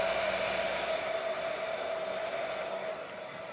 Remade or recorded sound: recorded